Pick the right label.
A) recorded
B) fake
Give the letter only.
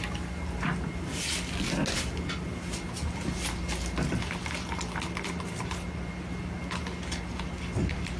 A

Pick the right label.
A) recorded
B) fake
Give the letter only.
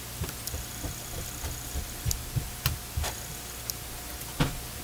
A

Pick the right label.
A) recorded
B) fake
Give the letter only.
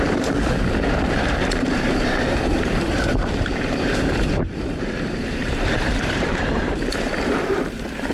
B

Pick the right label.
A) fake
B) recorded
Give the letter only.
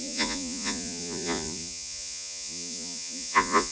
A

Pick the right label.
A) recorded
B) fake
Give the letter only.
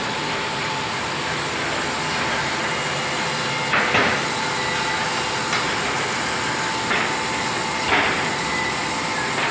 A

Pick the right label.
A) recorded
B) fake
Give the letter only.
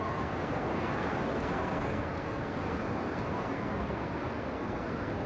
B